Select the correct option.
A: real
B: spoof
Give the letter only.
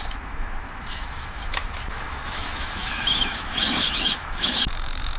B